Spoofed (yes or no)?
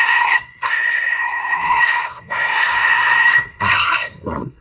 yes